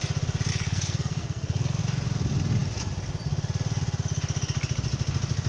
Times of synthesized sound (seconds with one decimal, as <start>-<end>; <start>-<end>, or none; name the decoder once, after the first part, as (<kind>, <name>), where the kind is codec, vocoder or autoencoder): 0.5-1.8 (codec, SNAC)